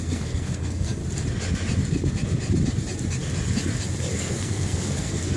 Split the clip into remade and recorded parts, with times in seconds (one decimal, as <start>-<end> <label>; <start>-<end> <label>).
0.0-1.0 remade; 1.0-4.2 recorded; 4.2-5.4 remade